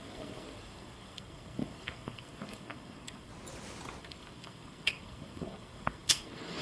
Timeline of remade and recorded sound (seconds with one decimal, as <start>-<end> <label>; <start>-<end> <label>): 0.0-3.3 remade; 3.3-4.0 recorded; 4.0-6.6 remade